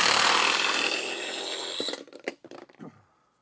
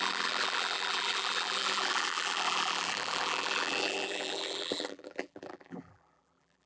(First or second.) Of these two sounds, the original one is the first